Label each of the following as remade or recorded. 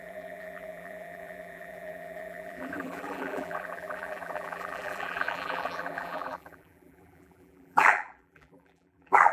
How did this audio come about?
remade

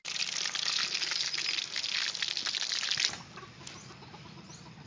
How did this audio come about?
recorded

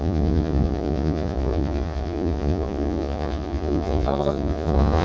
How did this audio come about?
remade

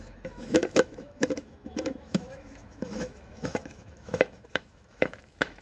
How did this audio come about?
remade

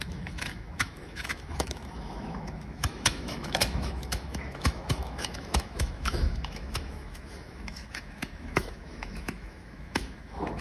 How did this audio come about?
remade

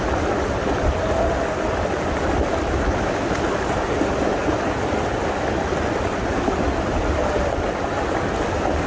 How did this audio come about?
recorded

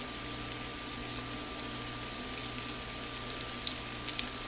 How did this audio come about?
recorded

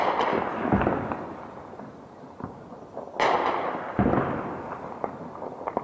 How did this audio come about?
recorded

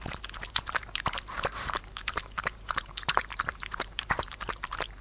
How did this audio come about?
remade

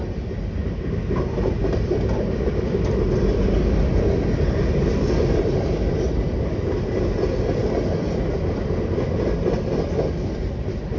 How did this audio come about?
recorded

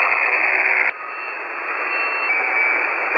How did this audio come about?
recorded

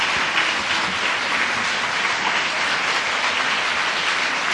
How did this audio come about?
recorded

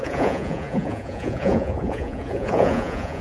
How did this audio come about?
remade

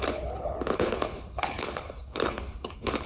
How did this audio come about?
remade